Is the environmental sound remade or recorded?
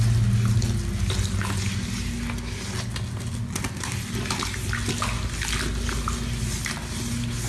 recorded